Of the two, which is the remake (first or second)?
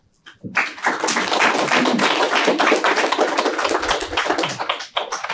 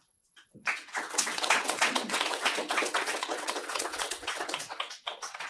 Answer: second